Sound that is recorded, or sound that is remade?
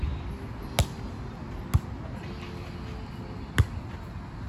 recorded